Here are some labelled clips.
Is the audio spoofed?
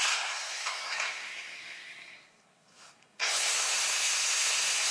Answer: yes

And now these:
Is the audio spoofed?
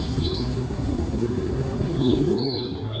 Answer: yes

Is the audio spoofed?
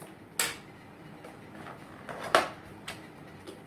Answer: no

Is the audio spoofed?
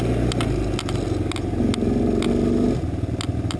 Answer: no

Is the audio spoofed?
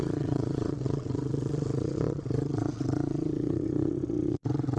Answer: yes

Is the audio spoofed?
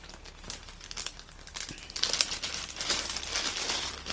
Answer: no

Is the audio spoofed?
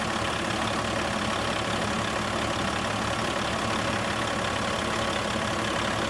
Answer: no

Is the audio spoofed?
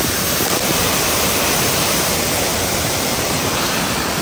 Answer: yes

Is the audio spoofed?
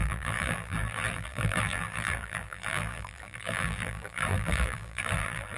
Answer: yes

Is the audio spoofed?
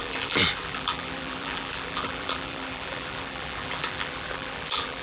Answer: yes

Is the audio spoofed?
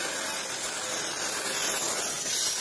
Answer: no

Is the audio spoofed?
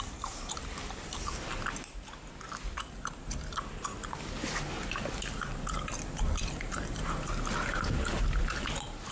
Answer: no